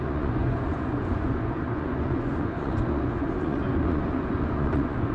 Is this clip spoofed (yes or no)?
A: yes